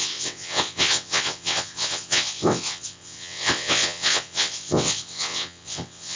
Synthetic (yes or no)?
yes